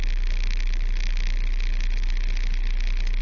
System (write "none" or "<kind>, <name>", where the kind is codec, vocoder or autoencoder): none